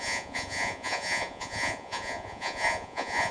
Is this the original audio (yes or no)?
no